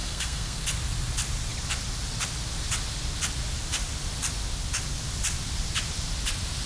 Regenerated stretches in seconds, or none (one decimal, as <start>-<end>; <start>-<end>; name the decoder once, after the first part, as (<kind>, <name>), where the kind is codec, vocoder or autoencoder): 0.0-0.6 (codec, SNAC)